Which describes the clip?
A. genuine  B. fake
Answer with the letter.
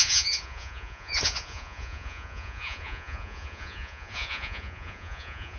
B